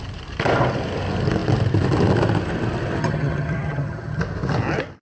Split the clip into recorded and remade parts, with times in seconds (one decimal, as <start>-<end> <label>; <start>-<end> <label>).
0.0-3.0 recorded; 3.0-4.2 remade; 4.2-5.1 recorded